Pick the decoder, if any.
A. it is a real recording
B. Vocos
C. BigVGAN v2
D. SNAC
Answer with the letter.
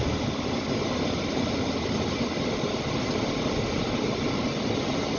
A